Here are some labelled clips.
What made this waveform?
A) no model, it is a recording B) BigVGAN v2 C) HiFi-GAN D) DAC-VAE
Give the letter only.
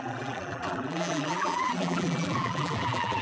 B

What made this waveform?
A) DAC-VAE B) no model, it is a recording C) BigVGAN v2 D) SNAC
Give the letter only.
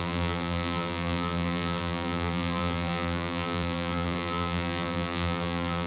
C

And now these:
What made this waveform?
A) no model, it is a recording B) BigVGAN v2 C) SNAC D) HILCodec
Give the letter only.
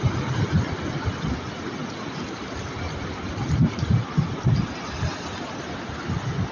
A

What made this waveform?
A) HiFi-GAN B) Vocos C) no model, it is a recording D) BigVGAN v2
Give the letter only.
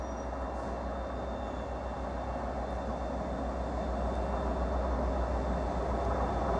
C